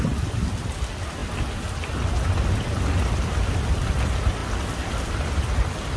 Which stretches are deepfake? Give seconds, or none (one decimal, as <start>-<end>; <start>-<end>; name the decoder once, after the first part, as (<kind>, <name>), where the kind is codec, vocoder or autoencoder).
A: none